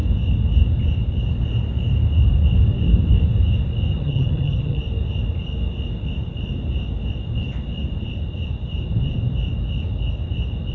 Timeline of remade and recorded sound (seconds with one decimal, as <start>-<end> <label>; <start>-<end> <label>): 0.0-3.9 recorded; 3.9-4.8 remade; 4.8-10.7 recorded